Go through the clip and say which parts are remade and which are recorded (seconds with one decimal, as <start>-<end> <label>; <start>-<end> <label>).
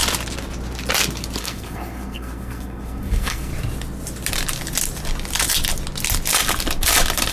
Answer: 0.0-1.4 recorded; 1.4-3.5 remade; 3.5-7.3 recorded